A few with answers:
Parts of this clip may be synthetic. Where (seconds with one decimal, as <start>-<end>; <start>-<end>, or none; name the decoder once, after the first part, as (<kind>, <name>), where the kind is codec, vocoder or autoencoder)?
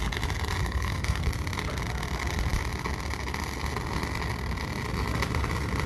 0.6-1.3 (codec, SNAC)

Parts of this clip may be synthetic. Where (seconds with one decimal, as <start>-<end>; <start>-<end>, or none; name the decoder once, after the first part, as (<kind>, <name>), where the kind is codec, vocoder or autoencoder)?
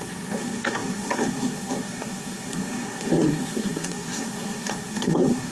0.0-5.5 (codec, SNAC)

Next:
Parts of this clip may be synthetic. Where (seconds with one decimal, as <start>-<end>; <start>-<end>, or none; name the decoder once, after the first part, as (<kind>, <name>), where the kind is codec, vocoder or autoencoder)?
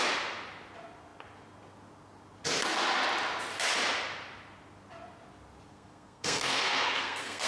5.7-7.5 (codec, SNAC)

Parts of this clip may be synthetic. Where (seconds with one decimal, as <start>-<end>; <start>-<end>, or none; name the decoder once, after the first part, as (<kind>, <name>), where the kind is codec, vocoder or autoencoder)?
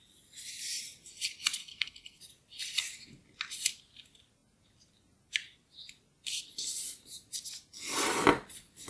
1.6-2.2 (codec, SNAC)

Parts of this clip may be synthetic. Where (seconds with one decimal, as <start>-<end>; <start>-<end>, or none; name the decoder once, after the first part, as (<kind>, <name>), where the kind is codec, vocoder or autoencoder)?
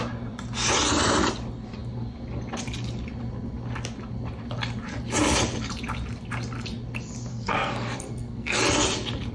7.3-8.6 (codec, SNAC)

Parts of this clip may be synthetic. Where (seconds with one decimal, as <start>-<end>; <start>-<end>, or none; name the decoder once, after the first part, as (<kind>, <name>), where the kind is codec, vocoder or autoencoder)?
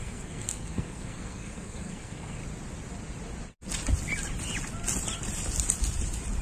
0.0-2.4 (codec, SNAC)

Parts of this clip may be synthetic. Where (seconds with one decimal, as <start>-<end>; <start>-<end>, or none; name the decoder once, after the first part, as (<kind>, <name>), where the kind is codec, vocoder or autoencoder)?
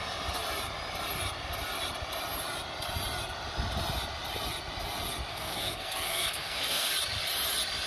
5.3-6.9 (codec, SNAC)